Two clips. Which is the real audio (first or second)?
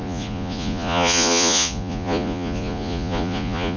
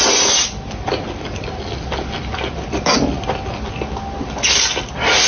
second